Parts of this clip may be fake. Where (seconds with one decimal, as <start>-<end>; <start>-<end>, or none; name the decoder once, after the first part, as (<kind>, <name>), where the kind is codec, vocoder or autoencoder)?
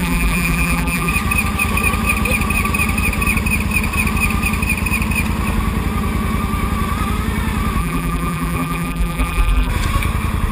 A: 0.0-1.1 (vocoder, BigVGAN v2); 7.8-9.7